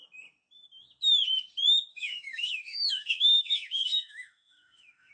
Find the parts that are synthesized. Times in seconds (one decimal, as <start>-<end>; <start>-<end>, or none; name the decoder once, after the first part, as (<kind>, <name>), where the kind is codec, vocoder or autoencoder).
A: 1.9-5.1 (autoencoder, DAC-VAE)